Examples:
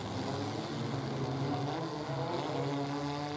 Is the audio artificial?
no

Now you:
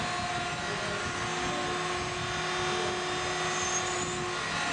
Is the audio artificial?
no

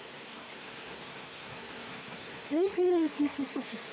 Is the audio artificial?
yes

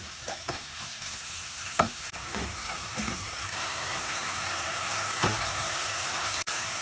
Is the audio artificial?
yes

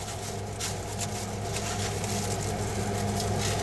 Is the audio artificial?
no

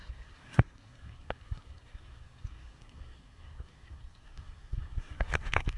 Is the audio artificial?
yes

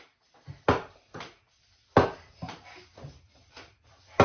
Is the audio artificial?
no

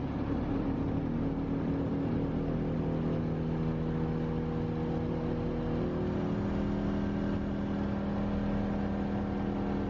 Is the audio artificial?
no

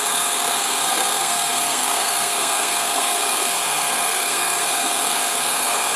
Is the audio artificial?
yes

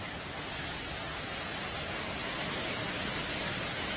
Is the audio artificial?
no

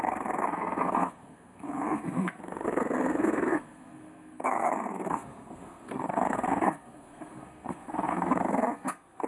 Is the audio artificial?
yes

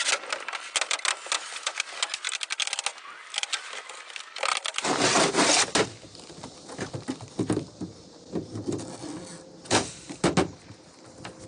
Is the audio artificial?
no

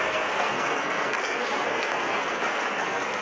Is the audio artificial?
yes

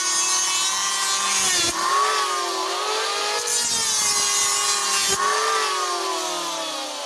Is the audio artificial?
no